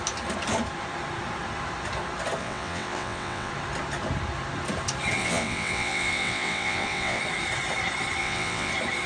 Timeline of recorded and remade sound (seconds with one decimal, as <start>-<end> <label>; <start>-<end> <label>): 0.0-2.4 recorded; 2.4-3.5 remade; 3.5-5.2 recorded; 5.2-7.2 remade; 7.2-8.2 recorded; 8.2-8.7 remade; 8.7-9.1 recorded